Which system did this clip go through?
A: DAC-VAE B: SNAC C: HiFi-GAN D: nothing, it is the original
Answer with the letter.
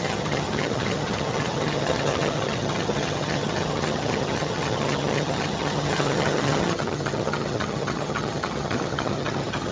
C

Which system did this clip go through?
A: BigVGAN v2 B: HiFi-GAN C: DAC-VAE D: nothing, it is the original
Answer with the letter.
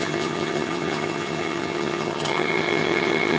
B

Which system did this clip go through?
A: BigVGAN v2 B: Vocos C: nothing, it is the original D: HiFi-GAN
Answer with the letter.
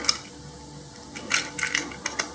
C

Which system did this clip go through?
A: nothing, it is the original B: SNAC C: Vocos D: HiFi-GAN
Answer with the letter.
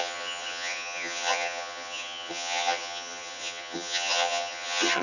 D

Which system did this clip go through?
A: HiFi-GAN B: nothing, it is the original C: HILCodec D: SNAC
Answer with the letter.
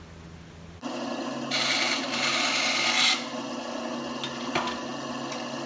B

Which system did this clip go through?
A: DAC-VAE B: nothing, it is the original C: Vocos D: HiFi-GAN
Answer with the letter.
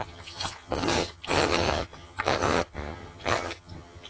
D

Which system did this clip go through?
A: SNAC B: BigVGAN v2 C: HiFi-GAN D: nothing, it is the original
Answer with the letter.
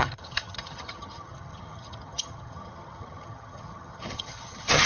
C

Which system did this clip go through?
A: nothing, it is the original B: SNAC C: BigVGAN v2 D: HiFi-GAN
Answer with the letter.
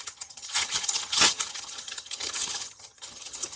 D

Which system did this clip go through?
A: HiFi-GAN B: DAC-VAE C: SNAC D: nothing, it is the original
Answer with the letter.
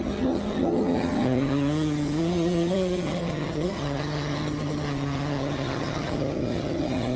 A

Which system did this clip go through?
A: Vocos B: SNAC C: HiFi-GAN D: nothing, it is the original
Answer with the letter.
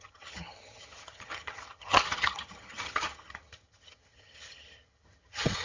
C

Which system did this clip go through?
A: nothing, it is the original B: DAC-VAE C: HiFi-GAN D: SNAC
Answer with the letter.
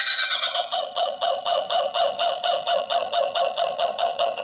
C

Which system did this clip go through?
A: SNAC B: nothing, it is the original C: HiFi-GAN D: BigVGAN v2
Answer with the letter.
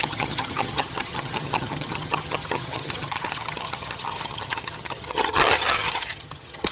C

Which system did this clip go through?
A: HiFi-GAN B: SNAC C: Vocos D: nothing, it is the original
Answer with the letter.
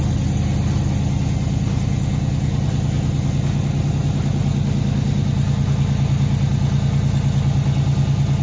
D